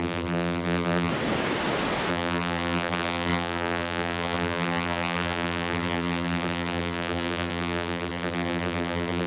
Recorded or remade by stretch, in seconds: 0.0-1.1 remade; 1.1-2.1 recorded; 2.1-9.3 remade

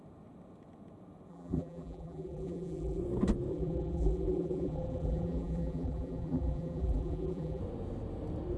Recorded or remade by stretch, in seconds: 0.0-1.3 recorded; 1.3-3.0 remade; 3.0-3.5 recorded; 3.5-7.6 remade; 7.6-8.6 recorded